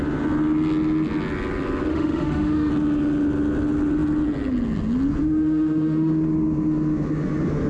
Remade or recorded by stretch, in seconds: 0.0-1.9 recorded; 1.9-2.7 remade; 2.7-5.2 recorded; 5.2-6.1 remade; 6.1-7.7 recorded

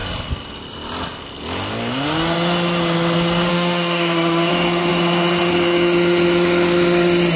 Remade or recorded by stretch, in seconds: 0.0-3.5 recorded; 3.5-4.5 remade; 4.5-7.4 recorded

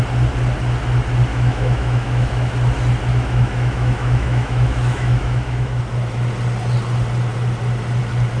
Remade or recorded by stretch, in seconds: 0.0-1.3 recorded; 1.3-2.5 remade; 2.5-3.1 recorded; 3.1-5.8 remade; 5.8-8.4 recorded